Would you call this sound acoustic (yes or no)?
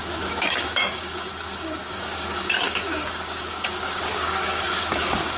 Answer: no